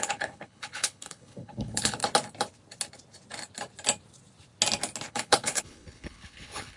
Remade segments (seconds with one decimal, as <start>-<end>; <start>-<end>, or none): 0.0-2.0; 5.1-6.8